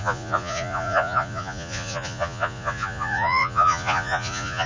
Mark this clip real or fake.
fake